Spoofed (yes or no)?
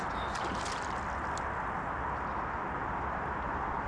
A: no